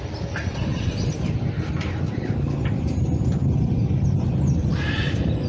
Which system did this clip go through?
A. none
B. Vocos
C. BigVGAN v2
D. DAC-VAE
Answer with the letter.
A